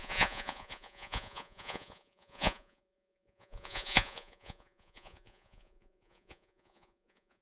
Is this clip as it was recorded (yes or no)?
no